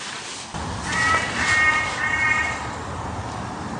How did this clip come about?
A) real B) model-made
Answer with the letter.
A